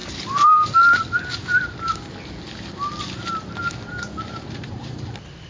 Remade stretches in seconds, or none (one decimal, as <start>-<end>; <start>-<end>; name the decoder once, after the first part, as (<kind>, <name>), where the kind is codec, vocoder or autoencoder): none